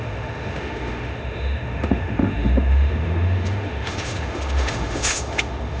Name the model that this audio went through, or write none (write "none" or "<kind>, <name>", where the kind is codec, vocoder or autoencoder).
autoencoder, DAC-VAE